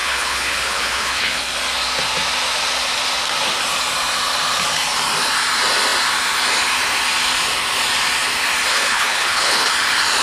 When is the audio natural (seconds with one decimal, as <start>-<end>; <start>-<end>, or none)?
1.4-8.7; 9.7-10.2